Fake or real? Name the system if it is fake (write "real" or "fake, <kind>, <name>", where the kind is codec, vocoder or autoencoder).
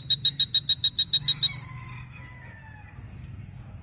real